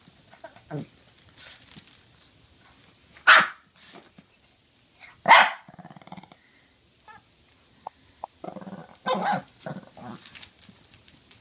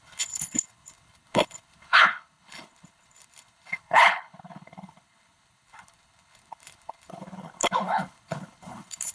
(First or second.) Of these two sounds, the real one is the first